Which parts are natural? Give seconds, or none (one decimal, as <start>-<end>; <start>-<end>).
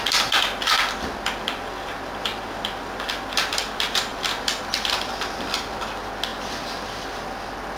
0.0-7.8